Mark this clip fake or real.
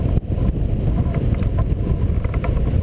real